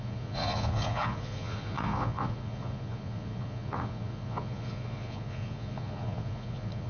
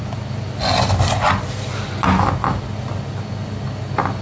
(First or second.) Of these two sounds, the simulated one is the first